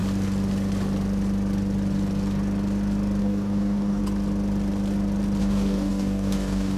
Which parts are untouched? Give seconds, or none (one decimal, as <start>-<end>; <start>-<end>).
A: 0.0-3.2; 4.0-5.4